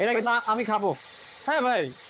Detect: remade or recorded remade